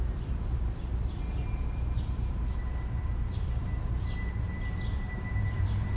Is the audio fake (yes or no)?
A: yes